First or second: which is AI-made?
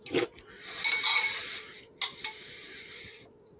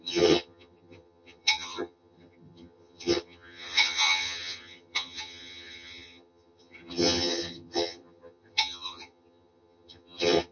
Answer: second